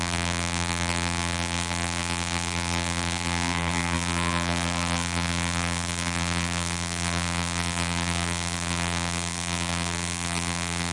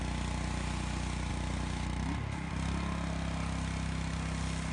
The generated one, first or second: first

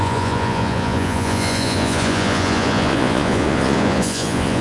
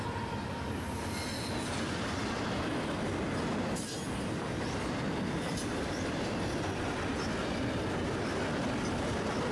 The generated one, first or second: first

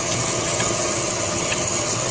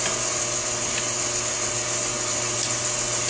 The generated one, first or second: first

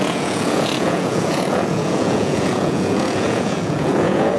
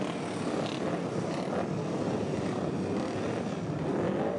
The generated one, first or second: first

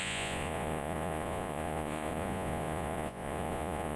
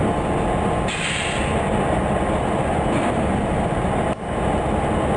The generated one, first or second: first